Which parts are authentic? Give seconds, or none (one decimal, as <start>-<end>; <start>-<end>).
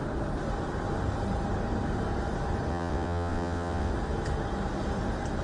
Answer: 0.0-2.7; 3.9-5.4